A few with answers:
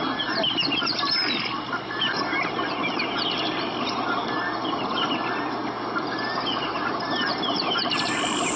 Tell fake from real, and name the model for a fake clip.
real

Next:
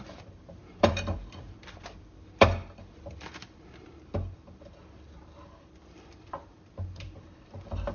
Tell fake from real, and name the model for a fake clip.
fake, vocoder, BigVGAN v2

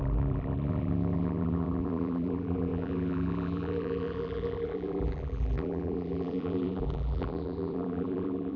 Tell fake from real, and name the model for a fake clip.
fake, vocoder, BigVGAN v2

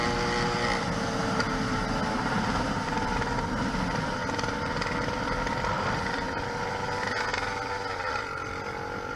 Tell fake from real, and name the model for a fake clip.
real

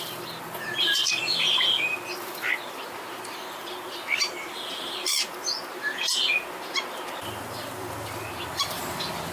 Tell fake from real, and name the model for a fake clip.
real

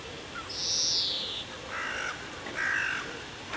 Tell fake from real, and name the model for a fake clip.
real